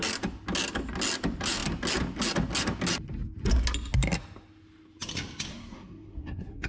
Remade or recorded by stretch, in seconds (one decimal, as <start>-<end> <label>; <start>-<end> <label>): 0.0-5.5 recorded; 5.5-6.7 remade